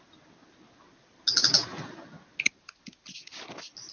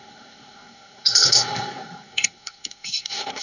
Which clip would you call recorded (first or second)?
first